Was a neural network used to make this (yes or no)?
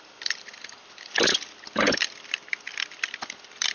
yes